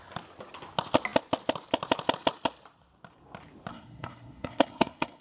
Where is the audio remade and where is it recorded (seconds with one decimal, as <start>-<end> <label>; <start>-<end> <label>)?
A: 0.0-3.7 recorded; 3.7-5.2 remade